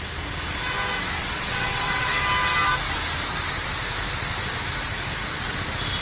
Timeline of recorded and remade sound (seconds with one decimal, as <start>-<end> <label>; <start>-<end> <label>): 0.0-1.2 recorded; 1.2-2.1 remade; 2.1-6.0 recorded